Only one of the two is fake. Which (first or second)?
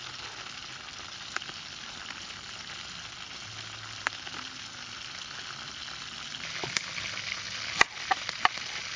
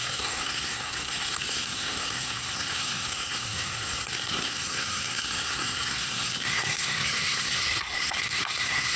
second